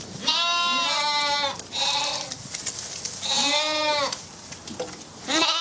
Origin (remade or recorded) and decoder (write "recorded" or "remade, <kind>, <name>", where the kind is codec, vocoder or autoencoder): recorded